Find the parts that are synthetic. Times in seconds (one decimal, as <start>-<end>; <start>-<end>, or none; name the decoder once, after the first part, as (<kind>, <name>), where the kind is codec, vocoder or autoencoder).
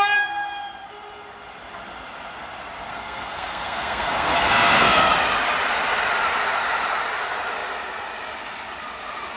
2.9-5.1 (codec, SNAC)